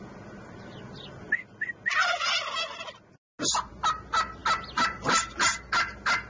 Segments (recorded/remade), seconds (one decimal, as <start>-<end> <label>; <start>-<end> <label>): 0.0-6.3 recorded